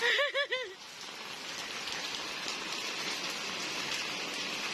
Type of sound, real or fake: real